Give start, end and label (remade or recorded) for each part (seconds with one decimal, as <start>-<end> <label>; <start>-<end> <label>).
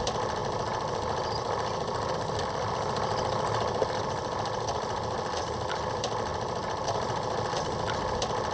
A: 0.0-8.5 recorded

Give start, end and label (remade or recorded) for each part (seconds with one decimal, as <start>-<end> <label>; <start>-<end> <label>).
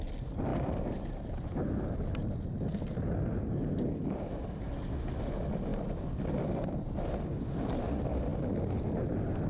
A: 0.0-9.5 recorded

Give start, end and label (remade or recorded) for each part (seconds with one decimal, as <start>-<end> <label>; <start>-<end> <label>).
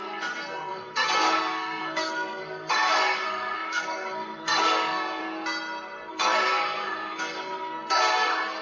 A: 0.0-5.2 remade; 5.2-6.1 recorded; 6.1-8.6 remade